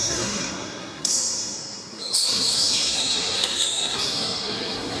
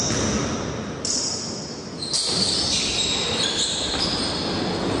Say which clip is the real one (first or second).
second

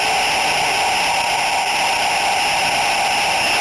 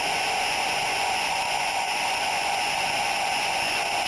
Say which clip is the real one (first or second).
first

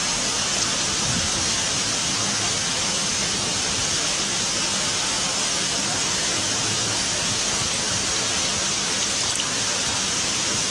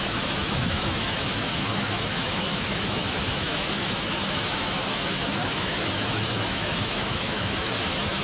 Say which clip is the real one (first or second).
first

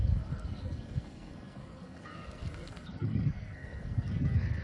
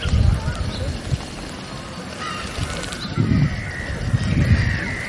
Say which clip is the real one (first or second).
second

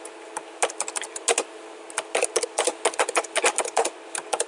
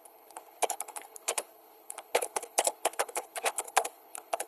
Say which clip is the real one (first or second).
first